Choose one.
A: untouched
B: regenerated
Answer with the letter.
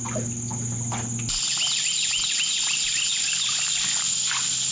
A